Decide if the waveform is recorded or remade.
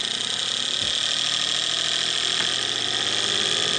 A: recorded